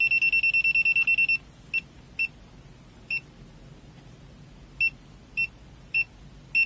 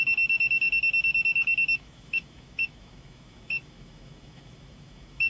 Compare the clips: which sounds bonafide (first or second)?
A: first